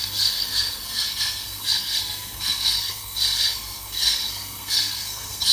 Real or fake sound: fake